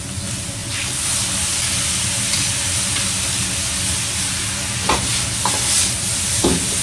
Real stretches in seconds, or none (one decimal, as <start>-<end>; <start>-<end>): 0.0-6.8